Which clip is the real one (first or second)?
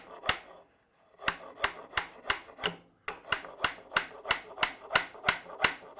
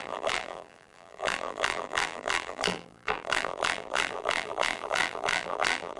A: first